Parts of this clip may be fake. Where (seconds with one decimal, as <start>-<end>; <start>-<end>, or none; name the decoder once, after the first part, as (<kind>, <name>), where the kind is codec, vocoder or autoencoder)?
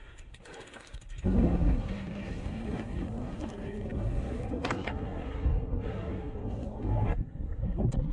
0.0-8.1 (codec, SNAC)